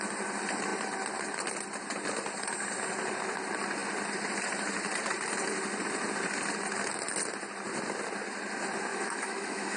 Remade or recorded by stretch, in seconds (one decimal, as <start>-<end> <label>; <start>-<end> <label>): 0.0-8.9 recorded; 8.9-9.8 remade